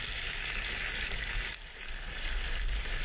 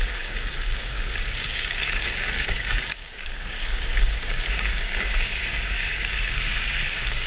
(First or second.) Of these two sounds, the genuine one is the first